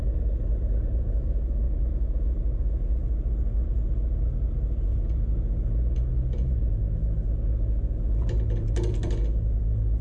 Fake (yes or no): no